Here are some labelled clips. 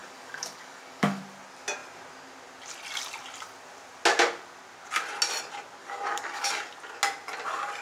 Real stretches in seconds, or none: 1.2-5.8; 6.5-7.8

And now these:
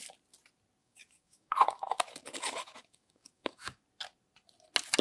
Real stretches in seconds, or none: 0.0-0.8; 3.8-5.0

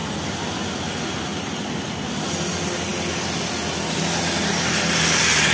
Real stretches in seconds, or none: 0.0-5.5

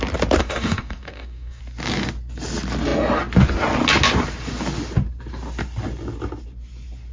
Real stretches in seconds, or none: 0.0-0.4; 1.6-7.1